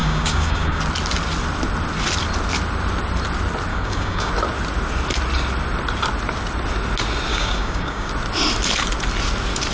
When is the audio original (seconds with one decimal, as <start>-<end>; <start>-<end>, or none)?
0.8-3.7; 4.3-7.3; 8.1-9.7